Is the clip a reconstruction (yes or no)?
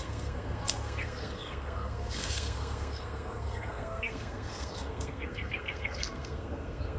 yes